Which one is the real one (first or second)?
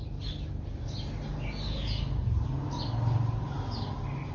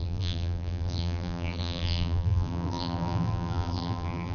first